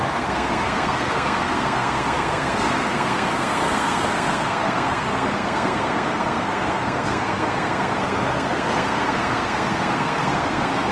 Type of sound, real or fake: fake